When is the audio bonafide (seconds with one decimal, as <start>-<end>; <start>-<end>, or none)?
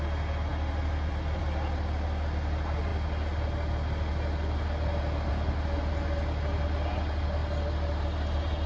0.0-8.7